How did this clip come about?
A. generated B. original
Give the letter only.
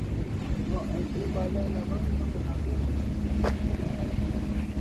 B